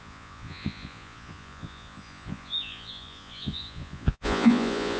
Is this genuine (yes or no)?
no